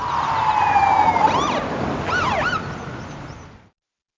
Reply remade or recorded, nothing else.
recorded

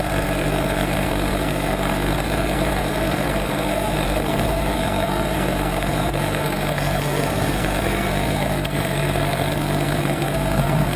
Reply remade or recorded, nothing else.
remade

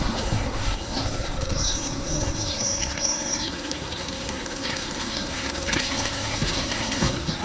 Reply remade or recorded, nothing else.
remade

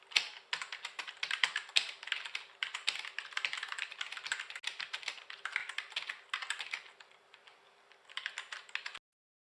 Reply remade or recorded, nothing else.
recorded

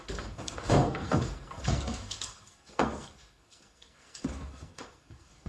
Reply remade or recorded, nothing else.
remade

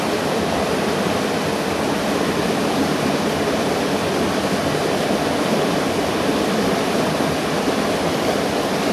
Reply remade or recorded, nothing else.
recorded